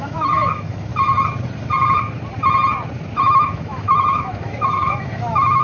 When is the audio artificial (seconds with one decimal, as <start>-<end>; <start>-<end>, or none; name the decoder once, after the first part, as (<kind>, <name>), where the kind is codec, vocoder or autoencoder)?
0.0-0.9 (autoencoder, DAC-VAE); 3.2-5.6